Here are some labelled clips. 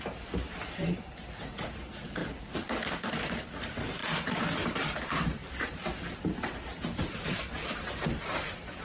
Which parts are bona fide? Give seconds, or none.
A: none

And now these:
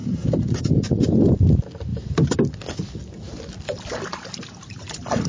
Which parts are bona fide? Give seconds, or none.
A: 0.0-1.9

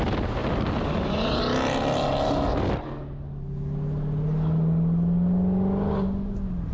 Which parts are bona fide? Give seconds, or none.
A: 0.0-0.4; 1.4-6.7